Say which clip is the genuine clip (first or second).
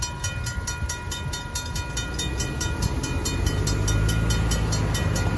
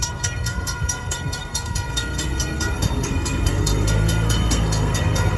first